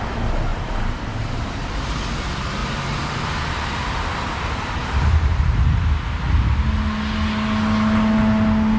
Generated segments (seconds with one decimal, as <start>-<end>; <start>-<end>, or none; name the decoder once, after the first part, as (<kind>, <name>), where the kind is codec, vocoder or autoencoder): 0.5-1.8 (vocoder, BigVGAN v2); 2.6-3.4; 4.8-5.4